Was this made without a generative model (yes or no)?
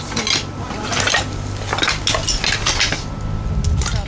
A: yes